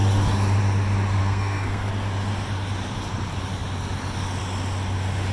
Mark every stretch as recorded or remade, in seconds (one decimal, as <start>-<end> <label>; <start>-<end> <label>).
0.0-1.2 recorded; 1.2-1.9 remade; 1.9-5.3 recorded